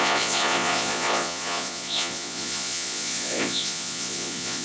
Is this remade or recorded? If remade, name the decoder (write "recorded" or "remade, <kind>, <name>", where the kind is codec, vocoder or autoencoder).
remade, vocoder, Vocos